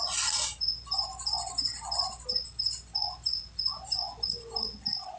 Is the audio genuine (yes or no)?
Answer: yes